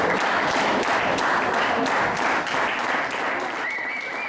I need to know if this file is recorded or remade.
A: recorded